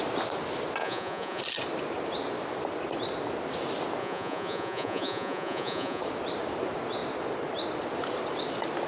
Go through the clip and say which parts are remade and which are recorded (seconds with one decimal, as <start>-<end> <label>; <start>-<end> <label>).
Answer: 0.0-0.8 recorded; 0.8-1.4 remade; 1.4-4.0 recorded; 4.0-6.0 remade; 6.0-8.9 recorded